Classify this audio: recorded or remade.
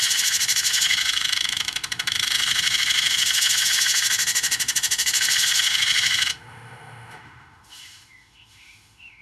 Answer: remade